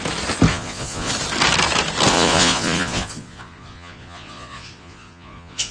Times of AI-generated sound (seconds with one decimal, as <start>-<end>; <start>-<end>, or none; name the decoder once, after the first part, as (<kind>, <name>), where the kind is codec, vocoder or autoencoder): 0.5-1.1 (vocoder, Vocos); 2.1-5.7